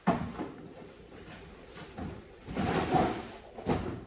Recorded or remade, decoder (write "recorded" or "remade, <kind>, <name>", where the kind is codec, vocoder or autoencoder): recorded